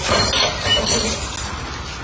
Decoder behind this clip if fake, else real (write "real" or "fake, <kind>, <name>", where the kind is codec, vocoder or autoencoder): real